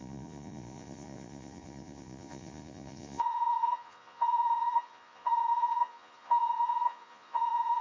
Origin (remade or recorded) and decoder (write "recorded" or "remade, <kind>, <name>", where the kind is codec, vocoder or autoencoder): remade, vocoder, Vocos